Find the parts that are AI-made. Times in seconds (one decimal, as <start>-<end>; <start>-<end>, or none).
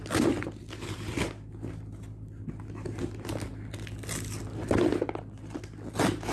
none